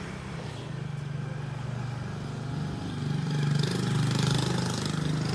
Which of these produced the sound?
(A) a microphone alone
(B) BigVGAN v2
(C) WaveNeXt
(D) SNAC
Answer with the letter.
A